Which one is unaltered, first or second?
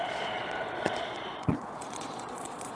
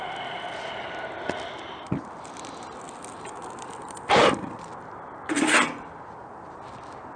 second